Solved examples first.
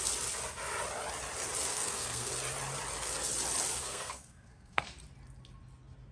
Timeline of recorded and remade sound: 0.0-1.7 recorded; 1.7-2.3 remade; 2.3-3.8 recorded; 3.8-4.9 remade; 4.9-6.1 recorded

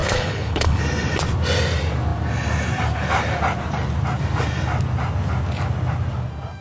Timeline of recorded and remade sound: 0.0-0.8 remade; 0.8-6.6 recorded

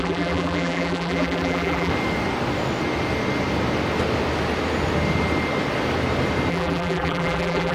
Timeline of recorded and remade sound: 0.0-1.9 remade; 1.9-6.5 recorded; 6.5-7.7 remade

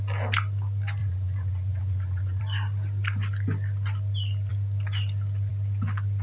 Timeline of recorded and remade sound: 0.0-1.0 recorded; 1.0-2.4 remade; 2.4-6.2 recorded